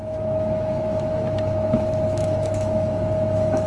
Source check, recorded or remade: remade